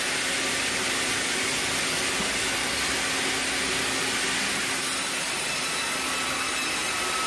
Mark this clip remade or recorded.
recorded